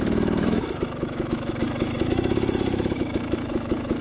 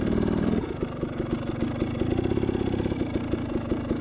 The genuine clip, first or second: second